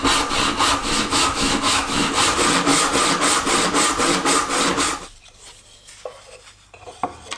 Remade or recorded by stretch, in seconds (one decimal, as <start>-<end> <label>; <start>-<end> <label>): 0.0-0.8 recorded; 0.8-2.1 remade; 2.1-7.4 recorded